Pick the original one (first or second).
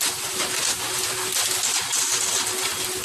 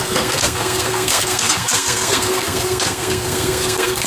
first